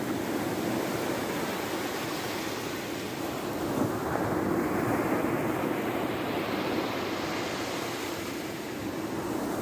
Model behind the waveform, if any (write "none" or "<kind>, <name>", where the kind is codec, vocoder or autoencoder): none